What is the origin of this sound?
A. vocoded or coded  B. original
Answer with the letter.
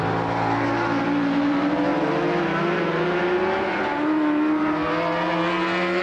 B